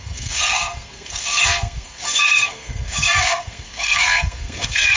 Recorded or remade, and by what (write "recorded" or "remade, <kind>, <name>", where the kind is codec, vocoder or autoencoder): remade, codec, SNAC